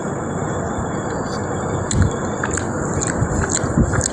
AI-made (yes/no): no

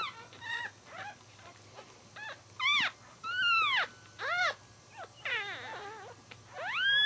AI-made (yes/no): no